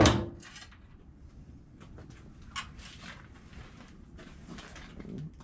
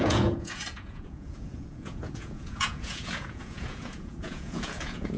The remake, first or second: second